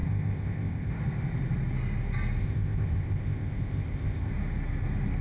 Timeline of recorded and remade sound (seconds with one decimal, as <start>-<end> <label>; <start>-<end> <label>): 0.0-0.9 remade; 0.9-2.4 recorded; 2.4-4.3 remade; 4.3-5.2 recorded